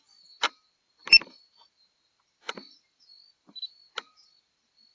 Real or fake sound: real